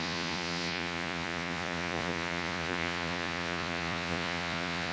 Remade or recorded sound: remade